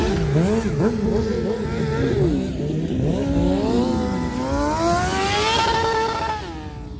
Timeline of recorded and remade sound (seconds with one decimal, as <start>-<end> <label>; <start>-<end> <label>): 0.0-7.0 recorded